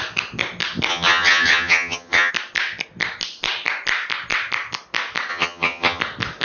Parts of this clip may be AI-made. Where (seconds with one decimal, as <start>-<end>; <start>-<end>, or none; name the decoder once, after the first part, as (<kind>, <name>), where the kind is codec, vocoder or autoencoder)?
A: 0.9-2.3 (vocoder, HiFi-GAN); 5.3-6.0